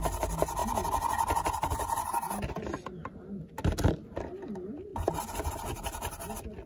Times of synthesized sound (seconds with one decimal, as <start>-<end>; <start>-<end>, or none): none